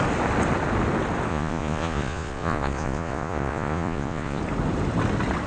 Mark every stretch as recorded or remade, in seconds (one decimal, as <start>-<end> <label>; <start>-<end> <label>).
0.0-1.3 recorded; 1.3-4.4 remade; 4.4-5.5 recorded